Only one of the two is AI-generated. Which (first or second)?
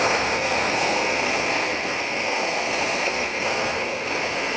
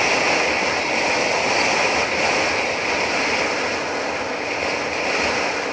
first